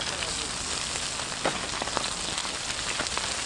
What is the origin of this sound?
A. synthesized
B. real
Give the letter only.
B